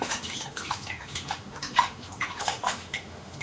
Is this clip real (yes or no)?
no